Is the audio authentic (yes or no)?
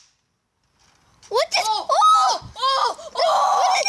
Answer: yes